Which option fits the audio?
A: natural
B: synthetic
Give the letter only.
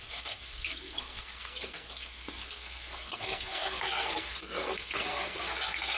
B